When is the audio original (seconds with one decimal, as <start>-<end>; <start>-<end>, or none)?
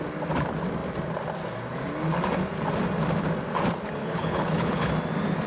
0.0-4.0; 4.9-5.5